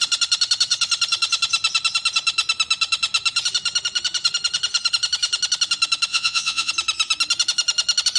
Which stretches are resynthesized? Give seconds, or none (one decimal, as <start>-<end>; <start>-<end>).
6.1-6.7